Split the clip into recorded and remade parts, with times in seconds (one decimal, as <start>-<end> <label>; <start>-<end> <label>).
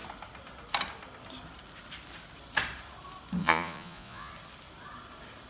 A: 0.0-3.4 recorded; 3.4-4.3 remade; 4.3-5.5 recorded